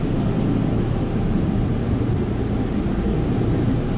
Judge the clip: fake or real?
real